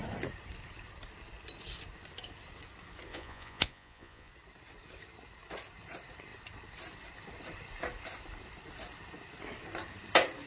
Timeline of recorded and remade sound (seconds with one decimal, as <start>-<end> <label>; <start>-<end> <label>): 0.0-3.1 recorded; 3.1-4.3 remade; 4.3-10.5 recorded